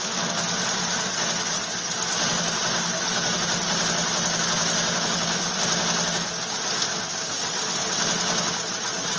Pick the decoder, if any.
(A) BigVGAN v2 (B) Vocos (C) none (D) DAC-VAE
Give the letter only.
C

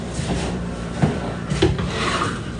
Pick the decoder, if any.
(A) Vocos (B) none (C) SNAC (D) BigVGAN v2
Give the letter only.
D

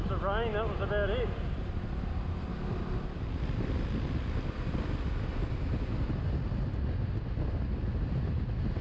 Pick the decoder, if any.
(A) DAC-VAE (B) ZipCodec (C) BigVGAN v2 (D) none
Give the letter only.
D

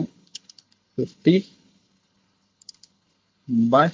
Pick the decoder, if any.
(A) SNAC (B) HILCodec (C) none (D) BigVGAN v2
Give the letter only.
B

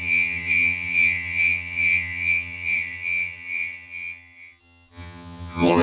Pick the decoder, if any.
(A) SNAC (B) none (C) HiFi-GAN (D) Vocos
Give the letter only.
C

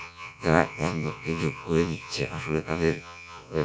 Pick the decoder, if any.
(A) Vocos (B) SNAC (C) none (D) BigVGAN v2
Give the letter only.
A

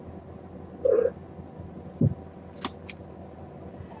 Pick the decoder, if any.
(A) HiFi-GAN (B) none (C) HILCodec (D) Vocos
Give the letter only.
B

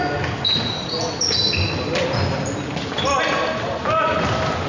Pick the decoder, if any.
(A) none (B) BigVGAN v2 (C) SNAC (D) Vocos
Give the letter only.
A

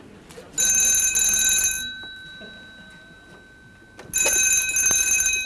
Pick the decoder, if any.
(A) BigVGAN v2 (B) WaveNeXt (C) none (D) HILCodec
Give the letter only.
C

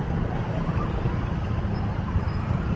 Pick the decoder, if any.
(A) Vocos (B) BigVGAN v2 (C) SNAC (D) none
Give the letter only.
D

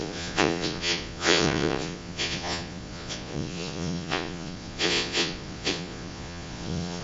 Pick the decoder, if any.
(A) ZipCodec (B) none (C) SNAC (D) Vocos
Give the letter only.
D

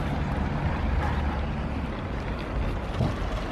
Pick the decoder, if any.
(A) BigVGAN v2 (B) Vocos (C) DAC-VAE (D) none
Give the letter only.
D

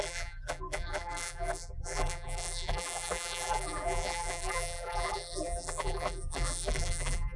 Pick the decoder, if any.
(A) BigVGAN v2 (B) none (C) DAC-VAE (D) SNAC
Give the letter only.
A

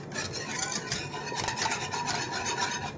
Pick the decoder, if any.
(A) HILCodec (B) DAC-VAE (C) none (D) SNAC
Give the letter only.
C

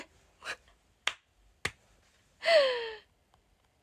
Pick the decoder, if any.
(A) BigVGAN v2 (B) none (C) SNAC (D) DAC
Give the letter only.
B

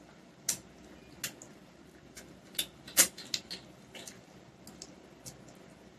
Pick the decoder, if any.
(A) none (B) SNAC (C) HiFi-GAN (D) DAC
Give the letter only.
A